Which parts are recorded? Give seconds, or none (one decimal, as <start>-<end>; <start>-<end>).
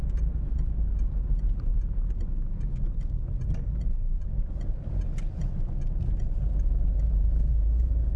1.7-5.9